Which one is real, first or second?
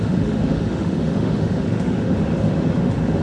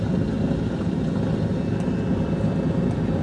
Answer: second